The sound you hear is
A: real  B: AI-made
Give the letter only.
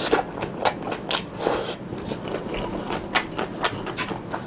A